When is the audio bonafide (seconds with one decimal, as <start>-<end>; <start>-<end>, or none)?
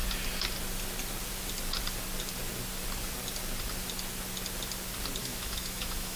0.0-5.2